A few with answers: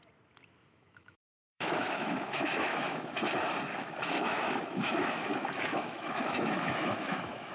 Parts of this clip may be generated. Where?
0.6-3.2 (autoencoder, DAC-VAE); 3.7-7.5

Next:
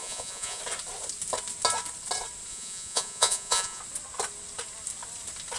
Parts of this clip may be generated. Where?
0.0-0.6 (vocoder, Vocos); 2.5-3.8

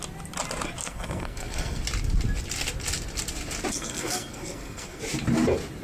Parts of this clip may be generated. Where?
0.8-1.8 (codec, SNAC); 3.7-5.0